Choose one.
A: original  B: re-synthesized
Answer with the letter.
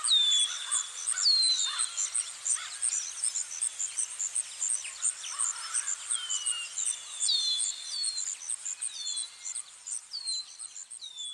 A